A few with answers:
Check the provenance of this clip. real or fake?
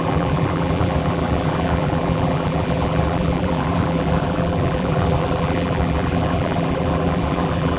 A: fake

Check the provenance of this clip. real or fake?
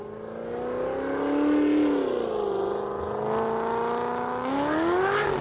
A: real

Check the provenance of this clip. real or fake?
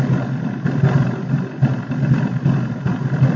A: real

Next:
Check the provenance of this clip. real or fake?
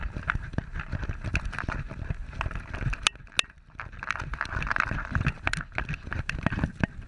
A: real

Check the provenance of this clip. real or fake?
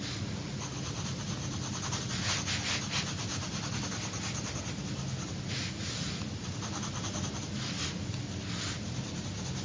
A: real